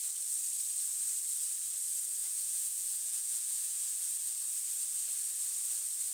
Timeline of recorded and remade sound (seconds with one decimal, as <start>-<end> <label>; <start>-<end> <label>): 0.0-2.2 recorded; 2.2-4.0 remade; 4.0-6.1 recorded